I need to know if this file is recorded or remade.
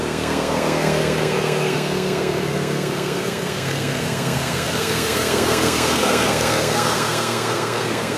remade